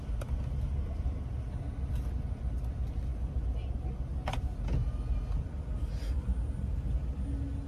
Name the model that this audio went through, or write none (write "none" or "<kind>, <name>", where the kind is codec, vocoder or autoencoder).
none